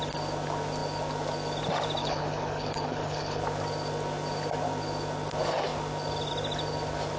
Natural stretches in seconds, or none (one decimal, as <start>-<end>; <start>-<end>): 0.0-2.0; 3.4-7.2